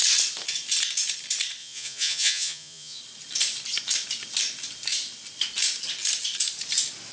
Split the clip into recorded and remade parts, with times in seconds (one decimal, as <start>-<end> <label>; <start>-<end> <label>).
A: 0.0-1.6 recorded; 1.6-3.0 remade; 3.0-7.1 recorded